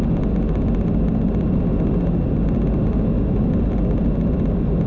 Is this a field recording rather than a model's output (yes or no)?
yes